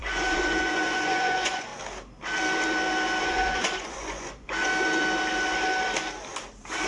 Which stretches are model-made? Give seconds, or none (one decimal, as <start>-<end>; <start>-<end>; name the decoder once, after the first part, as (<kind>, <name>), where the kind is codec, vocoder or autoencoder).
0.0-1.7 (vocoder, Vocos); 3.2-4.7